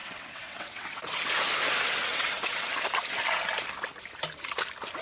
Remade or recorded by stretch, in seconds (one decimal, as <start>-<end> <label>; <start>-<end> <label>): 0.0-1.0 remade; 1.0-2.1 recorded; 2.1-2.7 remade; 2.7-5.0 recorded